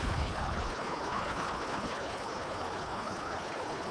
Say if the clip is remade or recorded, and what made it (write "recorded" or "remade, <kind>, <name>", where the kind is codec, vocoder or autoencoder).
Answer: remade, codec, HILCodec